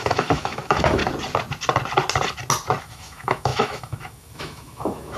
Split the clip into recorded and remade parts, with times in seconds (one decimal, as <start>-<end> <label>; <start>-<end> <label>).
0.0-1.0 remade; 1.0-2.8 recorded; 2.8-5.2 remade